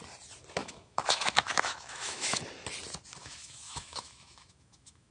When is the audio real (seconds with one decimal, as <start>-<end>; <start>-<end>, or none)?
0.0-0.6; 2.4-3.2